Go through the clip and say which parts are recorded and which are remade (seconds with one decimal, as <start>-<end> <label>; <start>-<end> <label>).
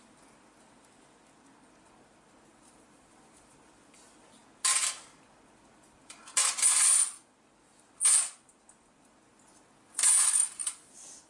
0.0-11.3 recorded